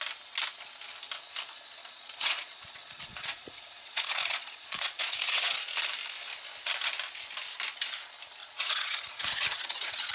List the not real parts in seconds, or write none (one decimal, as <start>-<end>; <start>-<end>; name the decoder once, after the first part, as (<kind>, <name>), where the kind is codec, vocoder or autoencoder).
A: 1.8-5.7 (vocoder, Vocos); 8.4-10.1